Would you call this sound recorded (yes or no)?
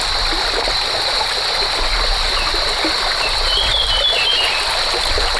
yes